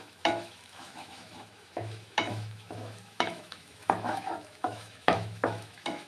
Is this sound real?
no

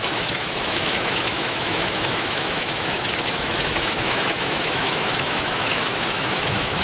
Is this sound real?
no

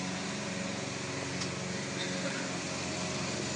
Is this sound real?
yes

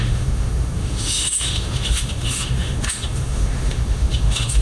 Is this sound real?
no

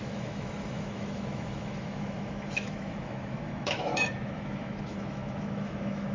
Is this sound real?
no